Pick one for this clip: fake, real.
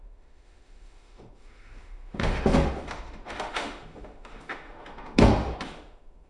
fake